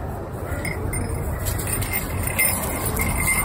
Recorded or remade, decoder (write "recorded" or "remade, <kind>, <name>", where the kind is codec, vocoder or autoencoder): recorded